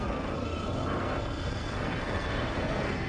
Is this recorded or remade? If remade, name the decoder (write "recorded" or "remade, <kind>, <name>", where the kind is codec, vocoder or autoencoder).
remade, codec, SNAC